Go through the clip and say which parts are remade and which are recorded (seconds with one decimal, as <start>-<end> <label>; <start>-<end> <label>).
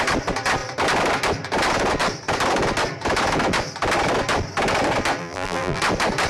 0.0-5.2 recorded; 5.2-5.8 remade; 5.8-6.3 recorded